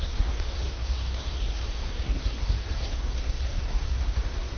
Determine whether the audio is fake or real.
fake